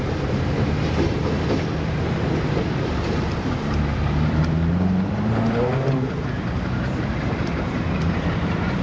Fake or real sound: fake